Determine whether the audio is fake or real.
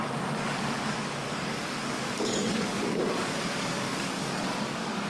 fake